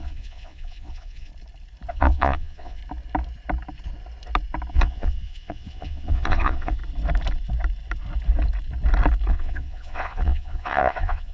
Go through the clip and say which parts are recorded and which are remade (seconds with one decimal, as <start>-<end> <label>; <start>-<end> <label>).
0.0-1.3 remade; 1.3-1.9 recorded; 1.9-2.8 remade; 2.8-4.7 recorded; 4.7-6.8 remade; 6.8-9.3 recorded; 9.3-11.3 remade